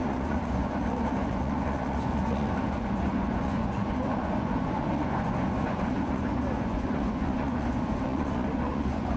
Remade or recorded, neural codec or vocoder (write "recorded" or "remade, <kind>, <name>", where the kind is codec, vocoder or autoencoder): remade, vocoder, Vocos